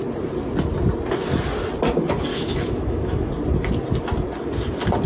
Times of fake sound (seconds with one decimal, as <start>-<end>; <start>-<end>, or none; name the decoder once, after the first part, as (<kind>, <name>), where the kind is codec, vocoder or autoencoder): 2.3-3.3 (autoencoder, DAC-VAE)